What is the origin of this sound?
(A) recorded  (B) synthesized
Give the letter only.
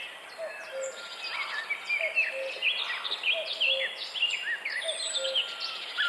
A